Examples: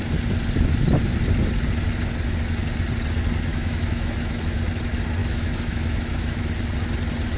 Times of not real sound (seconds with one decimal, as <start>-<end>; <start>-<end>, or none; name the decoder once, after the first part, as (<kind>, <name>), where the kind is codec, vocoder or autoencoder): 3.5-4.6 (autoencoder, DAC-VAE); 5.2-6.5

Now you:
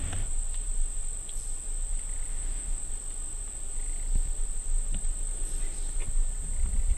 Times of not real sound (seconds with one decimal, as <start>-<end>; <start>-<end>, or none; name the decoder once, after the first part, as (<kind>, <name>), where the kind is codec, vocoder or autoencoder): 2.3-2.8 (autoencoder, DAC-VAE)

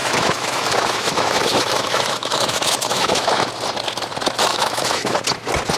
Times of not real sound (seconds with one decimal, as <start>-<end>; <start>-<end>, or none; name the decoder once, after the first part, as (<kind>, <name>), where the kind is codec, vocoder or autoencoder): 0.0-3.5 (autoencoder, DAC-VAE); 4.5-5.2

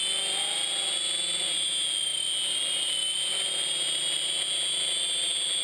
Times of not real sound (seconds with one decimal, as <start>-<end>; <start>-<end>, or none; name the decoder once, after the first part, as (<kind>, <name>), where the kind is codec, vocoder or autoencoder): none

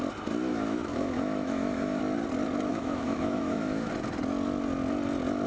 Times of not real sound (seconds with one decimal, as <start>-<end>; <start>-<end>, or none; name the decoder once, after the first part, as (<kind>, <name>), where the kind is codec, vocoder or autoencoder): 0.5-2.0 (autoencoder, DAC-VAE); 2.7-3.9